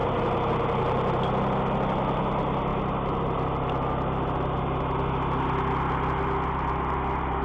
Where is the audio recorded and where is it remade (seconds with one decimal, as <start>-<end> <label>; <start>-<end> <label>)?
0.0-7.4 recorded

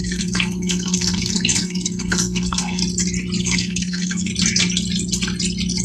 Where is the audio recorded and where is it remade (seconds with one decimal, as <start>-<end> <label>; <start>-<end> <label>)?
0.0-2.8 remade; 2.8-3.4 recorded; 3.4-4.3 remade; 4.3-5.8 recorded

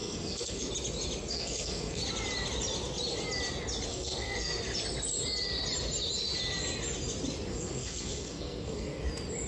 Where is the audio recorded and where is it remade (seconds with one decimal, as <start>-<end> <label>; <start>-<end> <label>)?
0.0-0.7 remade; 0.7-1.3 recorded; 1.3-2.0 remade; 2.0-3.9 recorded; 3.9-4.6 remade; 4.6-7.5 recorded; 7.5-9.0 remade; 9.0-9.5 recorded

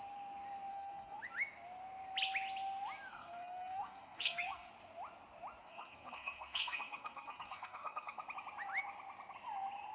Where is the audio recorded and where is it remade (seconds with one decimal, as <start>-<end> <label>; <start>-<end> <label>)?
0.0-0.7 recorded; 0.7-1.2 remade; 1.2-3.1 recorded; 3.1-4.7 remade; 4.7-5.6 recorded; 5.6-8.2 remade; 8.2-9.9 recorded

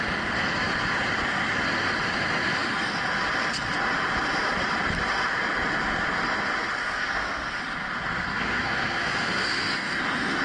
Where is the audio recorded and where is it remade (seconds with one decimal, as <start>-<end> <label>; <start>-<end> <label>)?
0.0-6.8 recorded; 6.8-7.6 remade; 7.6-8.1 recorded; 8.1-10.0 remade; 10.0-10.4 recorded

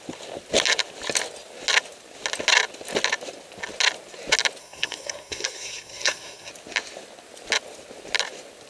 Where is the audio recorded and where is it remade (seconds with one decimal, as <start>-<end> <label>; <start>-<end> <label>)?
0.0-4.6 recorded; 4.6-6.5 remade; 6.5-8.7 recorded

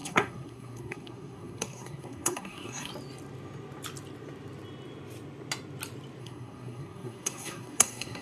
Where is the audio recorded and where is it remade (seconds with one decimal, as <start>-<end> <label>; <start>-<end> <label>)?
0.0-2.9 remade; 2.9-6.2 recorded; 6.2-8.2 remade